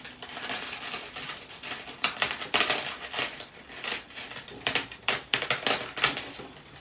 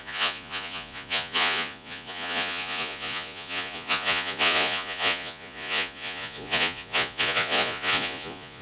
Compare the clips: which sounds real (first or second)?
first